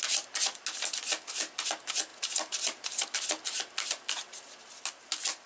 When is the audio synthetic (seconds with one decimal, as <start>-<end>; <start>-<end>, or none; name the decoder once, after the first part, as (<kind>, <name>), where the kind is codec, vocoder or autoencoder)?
none